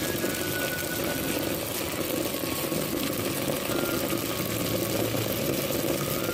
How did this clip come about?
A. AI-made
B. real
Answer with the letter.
B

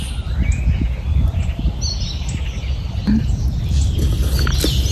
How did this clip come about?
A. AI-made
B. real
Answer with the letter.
B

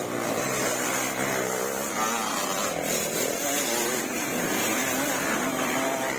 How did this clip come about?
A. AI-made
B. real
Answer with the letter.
B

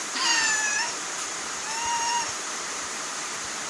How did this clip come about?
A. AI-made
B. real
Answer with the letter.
A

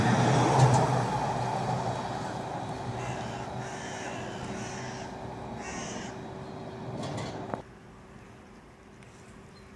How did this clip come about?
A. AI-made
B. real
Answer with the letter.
B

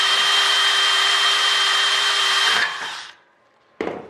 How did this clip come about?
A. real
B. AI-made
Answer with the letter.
B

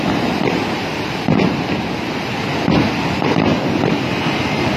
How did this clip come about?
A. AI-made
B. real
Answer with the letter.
B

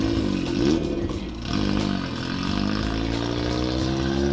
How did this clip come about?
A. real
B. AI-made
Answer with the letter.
A